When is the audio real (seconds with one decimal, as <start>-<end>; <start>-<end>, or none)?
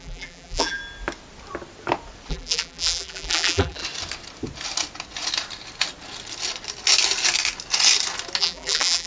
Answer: 0.8-2.3; 3.8-8.4